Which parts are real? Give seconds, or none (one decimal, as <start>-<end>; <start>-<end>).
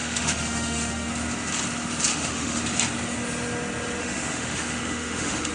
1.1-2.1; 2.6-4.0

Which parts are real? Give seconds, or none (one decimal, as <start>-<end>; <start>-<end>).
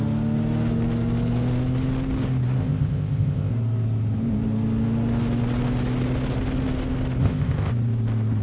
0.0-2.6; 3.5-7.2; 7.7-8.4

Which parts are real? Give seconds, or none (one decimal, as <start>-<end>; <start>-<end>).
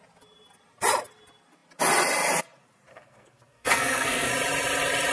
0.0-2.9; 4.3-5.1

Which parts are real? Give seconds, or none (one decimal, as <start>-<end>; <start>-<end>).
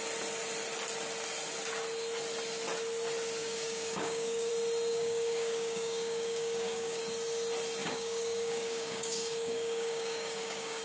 0.0-3.4; 4.5-4.9; 7.0-7.8